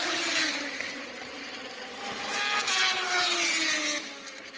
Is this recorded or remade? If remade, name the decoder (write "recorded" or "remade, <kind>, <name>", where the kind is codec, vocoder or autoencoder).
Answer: recorded